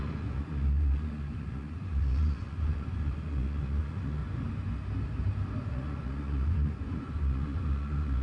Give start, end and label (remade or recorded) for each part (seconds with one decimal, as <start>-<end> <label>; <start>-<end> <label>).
0.0-4.2 remade; 4.2-5.6 recorded; 5.6-8.2 remade